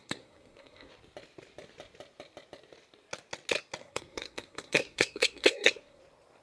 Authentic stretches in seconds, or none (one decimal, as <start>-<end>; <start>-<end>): 0.9-3.8; 6.0-6.4